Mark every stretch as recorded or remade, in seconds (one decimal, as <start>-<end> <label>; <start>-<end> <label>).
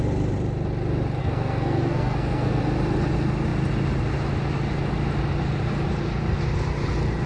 0.0-1.2 recorded; 1.2-2.6 remade; 2.6-7.3 recorded